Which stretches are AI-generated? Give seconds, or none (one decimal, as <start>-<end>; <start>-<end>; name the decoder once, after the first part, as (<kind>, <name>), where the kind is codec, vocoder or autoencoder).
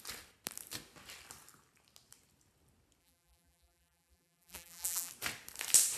3.0-5.1 (vocoder, BigVGAN v2)